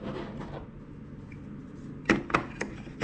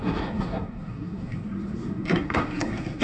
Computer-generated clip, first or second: second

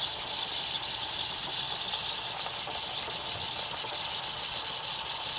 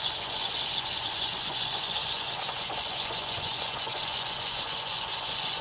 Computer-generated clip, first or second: second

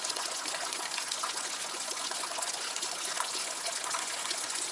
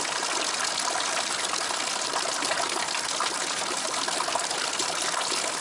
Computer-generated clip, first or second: first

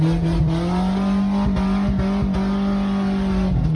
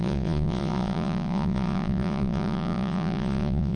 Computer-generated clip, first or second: second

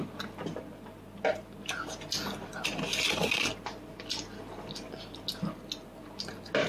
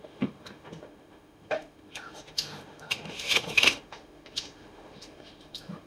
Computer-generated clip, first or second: second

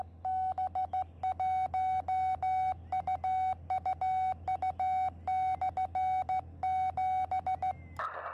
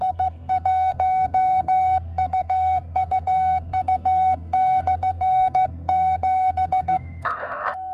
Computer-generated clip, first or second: second